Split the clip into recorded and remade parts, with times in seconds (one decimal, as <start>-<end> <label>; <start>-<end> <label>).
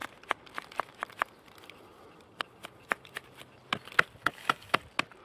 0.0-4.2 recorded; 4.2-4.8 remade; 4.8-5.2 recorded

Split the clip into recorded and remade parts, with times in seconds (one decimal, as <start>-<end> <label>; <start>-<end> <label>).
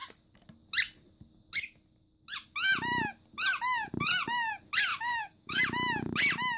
0.0-4.9 recorded; 4.9-5.6 remade; 5.6-6.6 recorded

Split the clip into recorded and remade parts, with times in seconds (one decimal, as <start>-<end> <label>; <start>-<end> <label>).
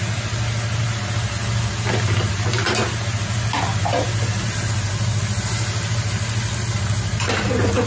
0.0-7.9 recorded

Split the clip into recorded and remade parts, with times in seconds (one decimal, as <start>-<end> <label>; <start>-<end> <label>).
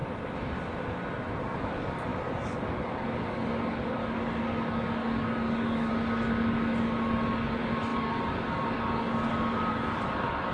0.0-1.4 recorded; 1.4-10.5 remade